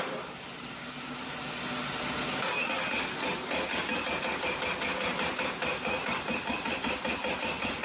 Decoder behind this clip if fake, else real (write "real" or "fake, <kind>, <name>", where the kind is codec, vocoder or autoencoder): real